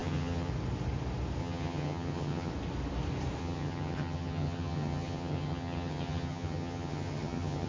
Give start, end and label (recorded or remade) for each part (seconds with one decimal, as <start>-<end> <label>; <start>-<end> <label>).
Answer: 0.0-0.5 remade; 0.5-1.4 recorded; 1.4-2.5 remade; 2.5-3.4 recorded; 3.4-7.7 remade